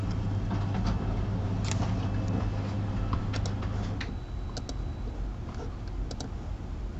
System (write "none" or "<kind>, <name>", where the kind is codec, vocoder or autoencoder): none